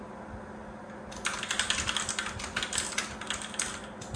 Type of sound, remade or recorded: recorded